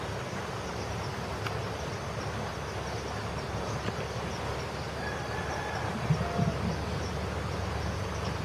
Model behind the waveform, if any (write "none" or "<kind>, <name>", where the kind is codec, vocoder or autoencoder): none